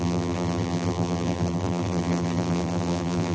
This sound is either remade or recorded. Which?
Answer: remade